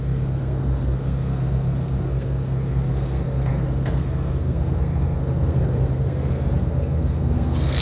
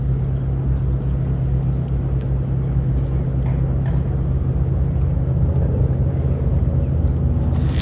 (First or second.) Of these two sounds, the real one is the second